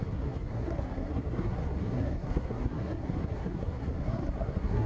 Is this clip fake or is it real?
fake